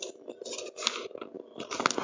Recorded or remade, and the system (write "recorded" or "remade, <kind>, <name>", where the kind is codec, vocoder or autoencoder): recorded